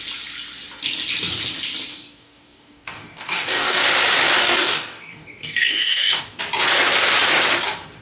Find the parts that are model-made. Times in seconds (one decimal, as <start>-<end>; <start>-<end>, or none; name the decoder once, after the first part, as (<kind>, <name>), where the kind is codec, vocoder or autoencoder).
1.9-3.8 (codec, DAC); 4.4-6.4